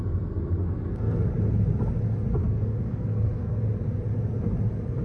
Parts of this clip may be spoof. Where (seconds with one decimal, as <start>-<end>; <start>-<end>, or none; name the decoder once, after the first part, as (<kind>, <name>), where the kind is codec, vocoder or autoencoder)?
0.6-1.2 (codec, SNAC); 2.4-3.6